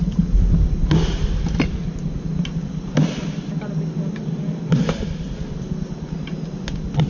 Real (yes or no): yes